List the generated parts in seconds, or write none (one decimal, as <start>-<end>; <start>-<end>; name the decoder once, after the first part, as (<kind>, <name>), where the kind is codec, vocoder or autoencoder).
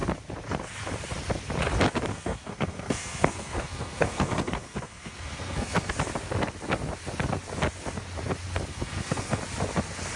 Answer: 2.1-5.9 (codec, SNAC); 8.7-9.4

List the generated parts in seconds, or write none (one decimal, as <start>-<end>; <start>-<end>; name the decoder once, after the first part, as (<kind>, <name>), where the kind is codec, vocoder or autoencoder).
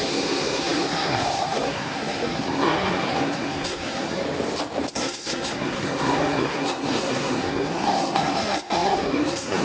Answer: 0.0-4.2 (codec, SNAC); 4.9-9.6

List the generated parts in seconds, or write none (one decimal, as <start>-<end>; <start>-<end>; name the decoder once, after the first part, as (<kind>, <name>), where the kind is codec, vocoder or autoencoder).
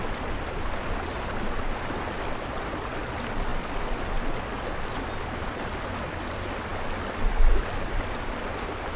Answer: none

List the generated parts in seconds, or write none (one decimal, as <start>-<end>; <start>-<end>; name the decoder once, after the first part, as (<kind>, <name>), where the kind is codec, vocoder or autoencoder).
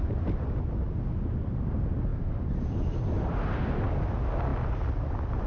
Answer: none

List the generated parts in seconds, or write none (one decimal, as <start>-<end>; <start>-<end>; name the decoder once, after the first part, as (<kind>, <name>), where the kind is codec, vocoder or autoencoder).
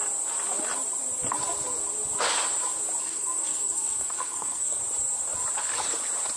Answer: 3.0-4.8 (codec, SNAC)